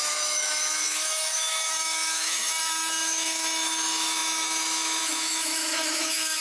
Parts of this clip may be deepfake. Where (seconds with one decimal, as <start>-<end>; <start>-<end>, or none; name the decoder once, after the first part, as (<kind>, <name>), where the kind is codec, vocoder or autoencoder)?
0.0-6.4 (autoencoder, DAC-VAE)